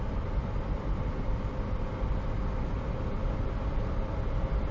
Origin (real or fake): real